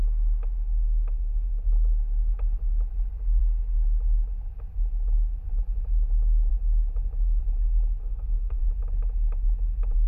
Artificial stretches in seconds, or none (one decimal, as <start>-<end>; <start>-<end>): 8.0-8.6